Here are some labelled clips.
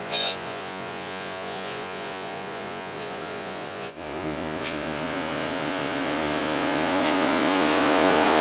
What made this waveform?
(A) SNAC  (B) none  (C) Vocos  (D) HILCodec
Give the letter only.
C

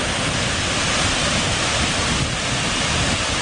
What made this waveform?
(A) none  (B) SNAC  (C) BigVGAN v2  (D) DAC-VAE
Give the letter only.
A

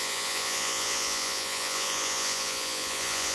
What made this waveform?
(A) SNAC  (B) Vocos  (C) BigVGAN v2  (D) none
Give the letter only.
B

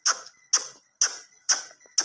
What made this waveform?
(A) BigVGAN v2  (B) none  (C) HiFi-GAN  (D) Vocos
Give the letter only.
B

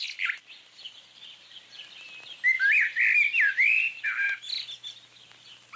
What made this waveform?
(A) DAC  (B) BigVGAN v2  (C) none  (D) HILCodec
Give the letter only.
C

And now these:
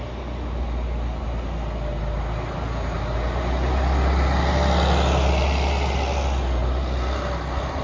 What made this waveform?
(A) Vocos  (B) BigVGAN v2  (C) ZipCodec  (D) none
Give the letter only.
D